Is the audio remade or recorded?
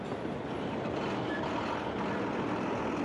recorded